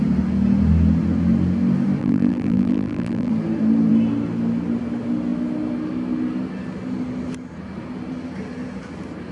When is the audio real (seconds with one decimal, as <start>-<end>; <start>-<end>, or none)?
0.0-2.0; 3.3-9.3